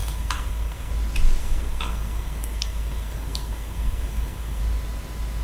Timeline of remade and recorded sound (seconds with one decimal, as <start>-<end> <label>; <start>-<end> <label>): 0.0-0.9 remade; 0.9-1.4 recorded; 1.4-4.6 remade; 4.6-5.4 recorded